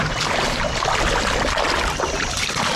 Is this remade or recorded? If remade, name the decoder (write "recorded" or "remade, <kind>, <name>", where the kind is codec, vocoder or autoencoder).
recorded